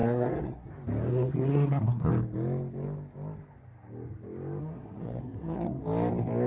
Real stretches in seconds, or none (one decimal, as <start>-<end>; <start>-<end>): 0.7-1.1; 2.1-4.6; 5.8-6.5